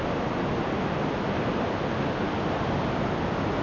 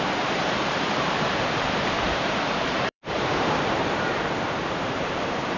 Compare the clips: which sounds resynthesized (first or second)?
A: second